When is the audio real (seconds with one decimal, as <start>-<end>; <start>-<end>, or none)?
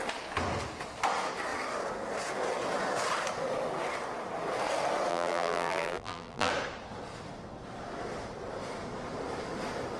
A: 0.0-5.1; 6.5-10.0